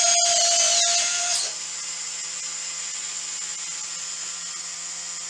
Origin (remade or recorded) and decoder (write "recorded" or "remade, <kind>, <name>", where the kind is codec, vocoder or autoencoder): recorded